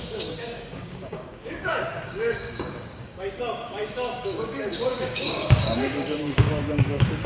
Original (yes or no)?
no